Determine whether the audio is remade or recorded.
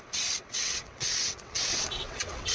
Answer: remade